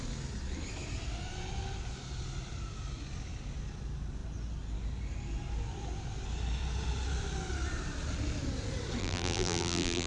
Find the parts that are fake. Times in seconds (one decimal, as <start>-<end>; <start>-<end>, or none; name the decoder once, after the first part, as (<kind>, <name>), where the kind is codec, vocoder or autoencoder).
9.0-10.1 (vocoder, BigVGAN v2)